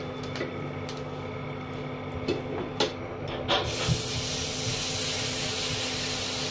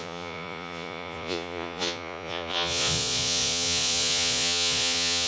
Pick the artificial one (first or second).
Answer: second